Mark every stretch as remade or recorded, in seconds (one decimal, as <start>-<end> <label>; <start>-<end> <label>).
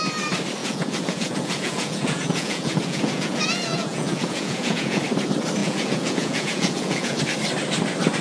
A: 0.0-0.6 recorded; 0.6-5.0 remade; 5.0-5.6 recorded; 5.6-7.2 remade; 7.2-8.2 recorded